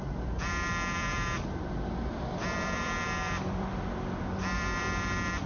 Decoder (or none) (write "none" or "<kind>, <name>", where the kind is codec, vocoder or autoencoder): vocoder, BigVGAN v2